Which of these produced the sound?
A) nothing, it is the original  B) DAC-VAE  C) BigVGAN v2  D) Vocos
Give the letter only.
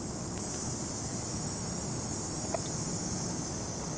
A